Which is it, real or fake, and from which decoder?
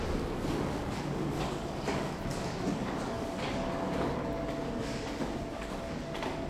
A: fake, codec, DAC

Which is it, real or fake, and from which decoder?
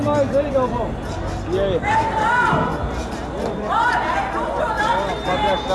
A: real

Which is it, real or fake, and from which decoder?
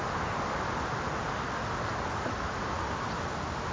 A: real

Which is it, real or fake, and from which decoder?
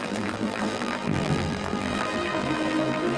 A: fake, vocoder, BigVGAN v2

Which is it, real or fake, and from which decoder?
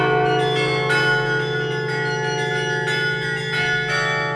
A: real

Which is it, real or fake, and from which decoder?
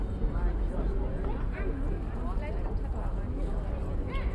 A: real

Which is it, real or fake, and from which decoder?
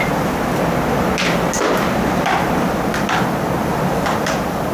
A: real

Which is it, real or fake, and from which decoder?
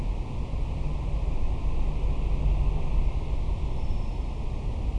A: real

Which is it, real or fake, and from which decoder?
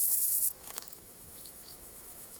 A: fake, autoencoder, DAC-VAE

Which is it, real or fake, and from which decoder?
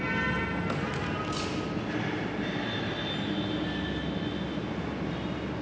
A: real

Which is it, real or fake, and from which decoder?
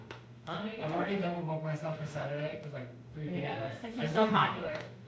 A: fake, autoencoder, DAC-VAE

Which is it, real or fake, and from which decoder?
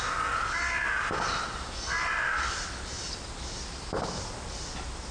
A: real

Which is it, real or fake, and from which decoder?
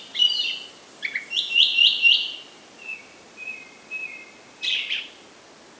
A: real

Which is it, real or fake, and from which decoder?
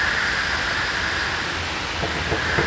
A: real